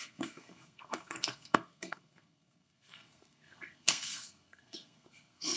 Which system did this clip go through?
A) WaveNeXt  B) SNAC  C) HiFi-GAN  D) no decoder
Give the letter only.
B